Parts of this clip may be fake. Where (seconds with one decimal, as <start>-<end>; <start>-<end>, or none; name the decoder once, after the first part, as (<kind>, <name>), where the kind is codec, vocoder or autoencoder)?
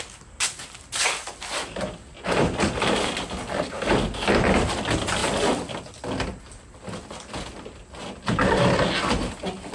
none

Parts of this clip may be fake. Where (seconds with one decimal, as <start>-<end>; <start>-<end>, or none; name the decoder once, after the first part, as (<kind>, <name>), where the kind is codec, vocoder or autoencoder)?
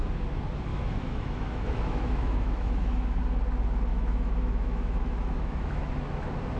0.7-3.2 (autoencoder, DAC-VAE); 3.9-5.9